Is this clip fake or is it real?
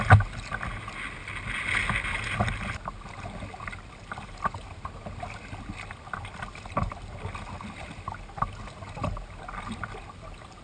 real